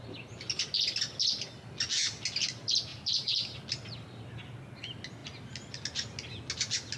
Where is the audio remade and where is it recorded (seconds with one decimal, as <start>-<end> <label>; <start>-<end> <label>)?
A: 0.0-2.9 recorded; 2.9-3.6 remade; 3.6-7.0 recorded